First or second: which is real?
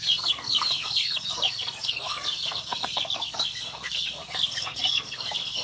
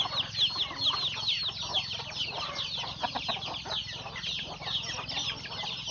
second